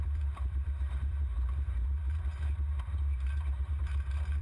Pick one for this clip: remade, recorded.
remade